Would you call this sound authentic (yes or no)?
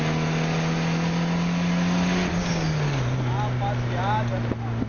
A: yes